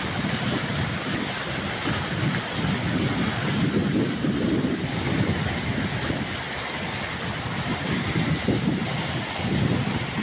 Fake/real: real